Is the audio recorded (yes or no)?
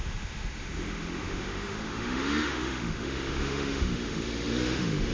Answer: no